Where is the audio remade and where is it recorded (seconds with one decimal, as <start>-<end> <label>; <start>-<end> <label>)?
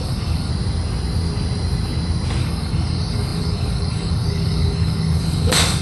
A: 0.0-0.5 remade; 0.5-2.4 recorded; 2.4-5.8 remade